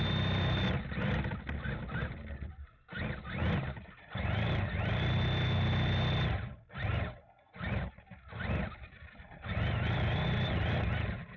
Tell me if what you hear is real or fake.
real